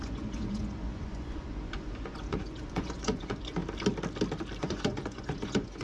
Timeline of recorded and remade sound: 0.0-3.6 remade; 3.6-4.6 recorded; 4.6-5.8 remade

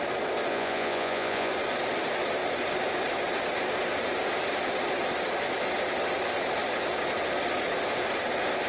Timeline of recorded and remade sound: 0.0-0.5 recorded; 0.5-1.5 remade; 1.5-8.7 recorded

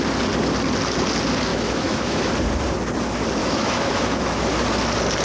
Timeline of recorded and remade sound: 0.0-1.5 recorded; 1.5-2.3 remade; 2.3-3.4 recorded; 3.4-4.5 remade; 4.5-5.2 recorded

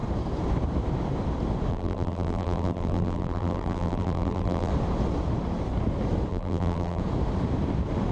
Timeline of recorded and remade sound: 0.0-1.7 recorded; 1.7-4.7 remade; 4.7-6.3 recorded; 6.3-7.0 remade; 7.0-8.1 recorded